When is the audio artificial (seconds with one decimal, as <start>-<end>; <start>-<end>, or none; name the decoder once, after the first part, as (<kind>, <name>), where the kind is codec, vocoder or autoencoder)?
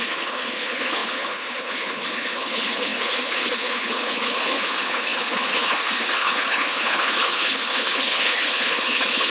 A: 0.0-9.3 (codec, HILCodec)